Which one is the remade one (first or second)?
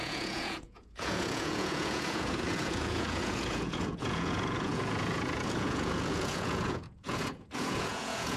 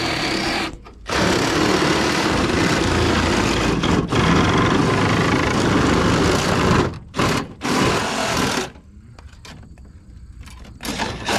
first